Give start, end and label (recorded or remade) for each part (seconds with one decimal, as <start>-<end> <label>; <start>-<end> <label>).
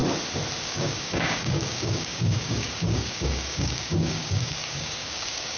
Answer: 0.0-0.6 recorded; 0.6-5.6 remade